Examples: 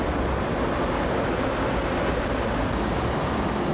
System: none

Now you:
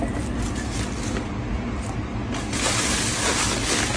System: none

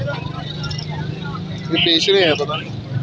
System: none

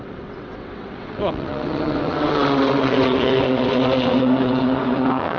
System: vocoder, WaveNeXt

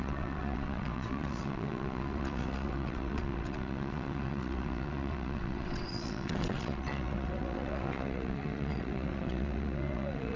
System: vocoder, WaveNeXt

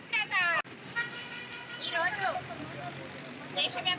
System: none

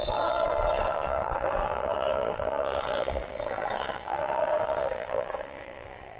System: vocoder, WaveNeXt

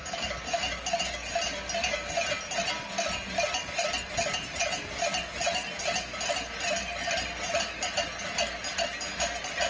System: none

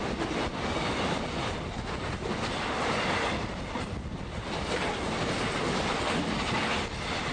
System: none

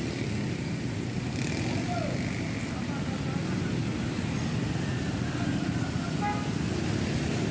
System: none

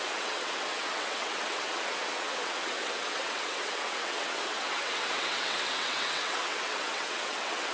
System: vocoder, WaveNeXt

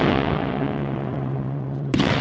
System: vocoder, WaveNeXt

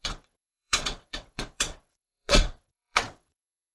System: vocoder, WaveNeXt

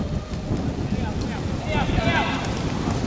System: none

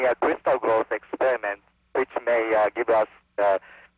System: none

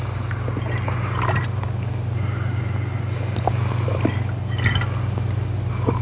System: none